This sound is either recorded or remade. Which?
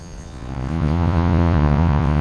remade